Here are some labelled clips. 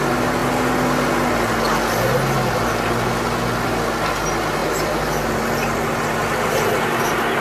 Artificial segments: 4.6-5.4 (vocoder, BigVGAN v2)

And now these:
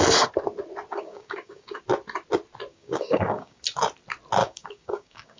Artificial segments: 0.9-1.8 (codec, DAC); 2.7-3.6; 4.4-5.4